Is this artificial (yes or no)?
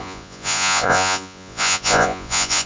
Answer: yes